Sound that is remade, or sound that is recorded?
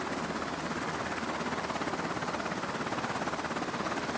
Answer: recorded